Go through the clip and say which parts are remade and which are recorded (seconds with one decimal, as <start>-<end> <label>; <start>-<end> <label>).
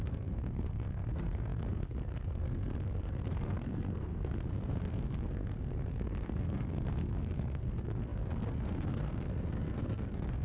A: 0.0-10.4 remade